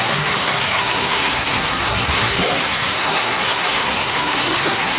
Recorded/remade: remade